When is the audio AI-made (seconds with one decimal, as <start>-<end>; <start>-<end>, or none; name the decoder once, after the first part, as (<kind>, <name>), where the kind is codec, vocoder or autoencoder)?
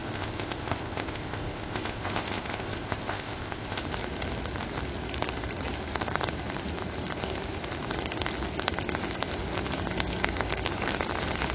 0.0-3.8 (codec, ZipCodec)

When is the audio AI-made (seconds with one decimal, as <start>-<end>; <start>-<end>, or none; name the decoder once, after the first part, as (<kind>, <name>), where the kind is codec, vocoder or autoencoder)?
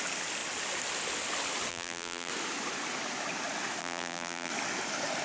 1.7-2.3 (vocoder, BigVGAN v2); 3.8-4.5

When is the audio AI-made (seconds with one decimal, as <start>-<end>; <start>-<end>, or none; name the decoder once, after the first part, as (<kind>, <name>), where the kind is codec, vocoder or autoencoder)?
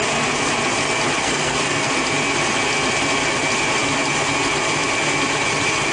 1.2-1.9 (codec, SNAC)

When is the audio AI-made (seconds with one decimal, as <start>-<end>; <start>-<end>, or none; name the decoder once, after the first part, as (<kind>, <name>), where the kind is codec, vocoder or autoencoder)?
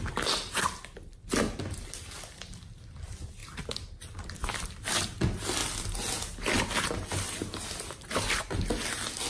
none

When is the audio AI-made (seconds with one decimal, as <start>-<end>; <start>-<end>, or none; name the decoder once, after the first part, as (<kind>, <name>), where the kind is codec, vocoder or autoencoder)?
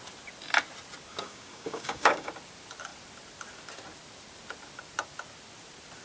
1.1-2.3 (codec, DAC)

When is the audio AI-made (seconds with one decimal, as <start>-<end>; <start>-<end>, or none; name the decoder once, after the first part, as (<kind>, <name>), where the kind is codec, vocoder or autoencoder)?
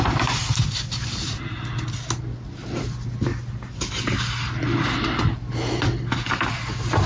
none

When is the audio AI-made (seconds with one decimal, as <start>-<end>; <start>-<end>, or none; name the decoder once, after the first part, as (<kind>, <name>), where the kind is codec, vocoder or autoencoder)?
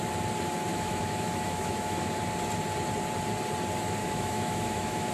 0.7-2.1 (autoencoder, DAC-VAE); 4.0-5.1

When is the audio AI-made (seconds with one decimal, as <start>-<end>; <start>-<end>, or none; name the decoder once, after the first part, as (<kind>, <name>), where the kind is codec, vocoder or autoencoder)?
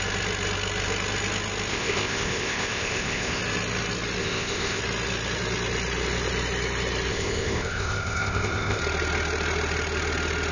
1.7-3.4 (codec, ZipCodec); 4.2-4.8; 7.1-8.8